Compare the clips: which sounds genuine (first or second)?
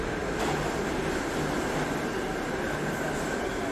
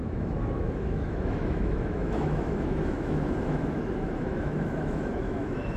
first